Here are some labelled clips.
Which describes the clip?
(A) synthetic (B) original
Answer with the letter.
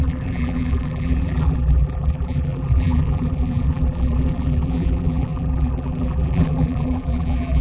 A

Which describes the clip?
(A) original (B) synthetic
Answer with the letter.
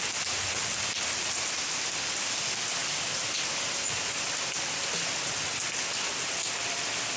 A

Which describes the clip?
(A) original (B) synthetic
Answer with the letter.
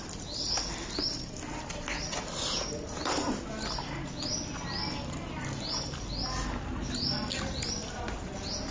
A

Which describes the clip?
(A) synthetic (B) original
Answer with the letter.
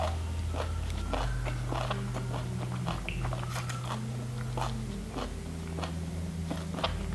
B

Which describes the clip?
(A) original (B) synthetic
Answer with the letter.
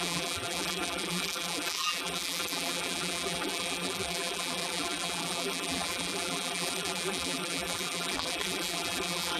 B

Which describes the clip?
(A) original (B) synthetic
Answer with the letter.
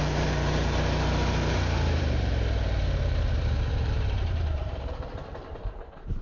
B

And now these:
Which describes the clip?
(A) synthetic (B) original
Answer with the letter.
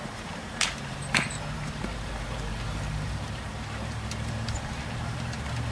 A